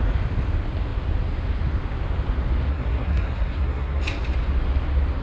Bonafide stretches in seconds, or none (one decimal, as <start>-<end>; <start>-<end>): 0.0-2.7; 4.0-5.2